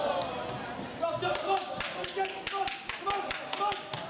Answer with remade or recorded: recorded